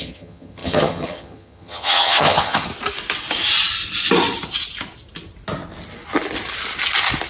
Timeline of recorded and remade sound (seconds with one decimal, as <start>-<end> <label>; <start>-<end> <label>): 0.0-2.7 remade; 2.7-7.3 recorded